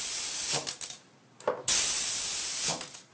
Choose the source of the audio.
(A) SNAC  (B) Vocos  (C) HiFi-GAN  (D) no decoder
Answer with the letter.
D